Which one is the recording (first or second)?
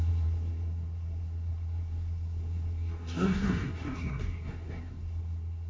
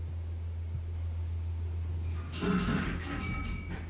second